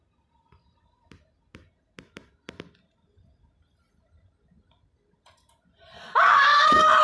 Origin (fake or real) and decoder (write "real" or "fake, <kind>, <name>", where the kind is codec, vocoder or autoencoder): real